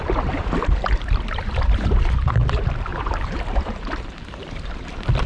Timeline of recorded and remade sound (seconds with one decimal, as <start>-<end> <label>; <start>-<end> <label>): 0.0-2.0 remade; 2.0-2.9 recorded; 2.9-4.1 remade; 4.1-5.3 recorded